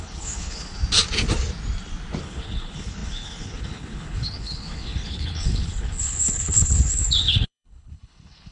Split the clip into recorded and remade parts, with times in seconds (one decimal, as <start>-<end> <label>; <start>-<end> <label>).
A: 0.0-0.8 remade; 0.8-2.2 recorded; 2.2-8.5 remade